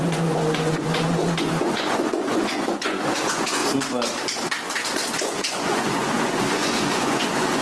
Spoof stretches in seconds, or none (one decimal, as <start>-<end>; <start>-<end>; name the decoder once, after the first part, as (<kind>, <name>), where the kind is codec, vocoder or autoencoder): 0.0-3.6 (vocoder, Vocos); 5.1-7.6